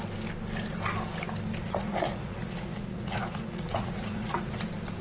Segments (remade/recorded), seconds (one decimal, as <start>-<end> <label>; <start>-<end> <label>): 0.0-1.6 recorded; 1.6-4.6 remade; 4.6-5.0 recorded